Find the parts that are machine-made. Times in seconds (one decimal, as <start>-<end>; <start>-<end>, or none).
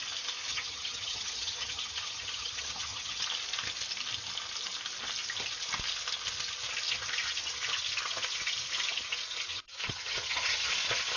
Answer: 0.5-3.2; 9.5-10.7